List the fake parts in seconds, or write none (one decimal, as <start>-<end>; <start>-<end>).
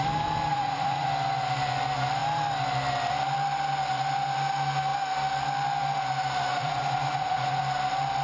0.5-1.1; 6.5-7.6